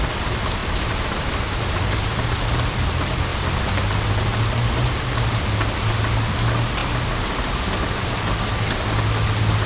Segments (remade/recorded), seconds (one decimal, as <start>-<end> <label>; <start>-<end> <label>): 0.0-0.6 recorded; 0.6-2.3 remade; 2.3-9.7 recorded